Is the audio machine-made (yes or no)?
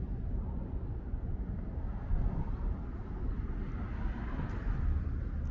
no